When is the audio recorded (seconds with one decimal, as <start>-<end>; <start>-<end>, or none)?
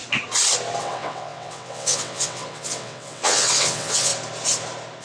0.0-0.8; 4.1-5.0